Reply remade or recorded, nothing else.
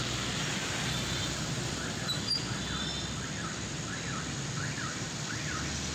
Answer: recorded